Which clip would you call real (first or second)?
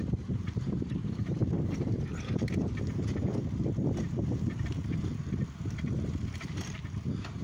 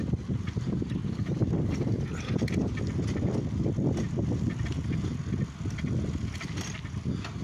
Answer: second